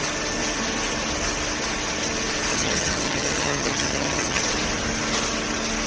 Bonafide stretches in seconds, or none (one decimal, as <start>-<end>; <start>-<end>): 0.0-2.5; 4.4-5.9